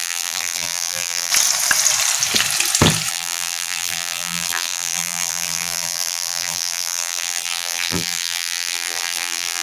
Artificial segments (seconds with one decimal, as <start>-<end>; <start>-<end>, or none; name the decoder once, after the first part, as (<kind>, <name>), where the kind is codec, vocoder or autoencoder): 0.0-1.3 (vocoder, BigVGAN v2); 3.1-9.6